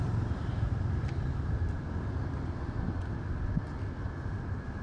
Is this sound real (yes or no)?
yes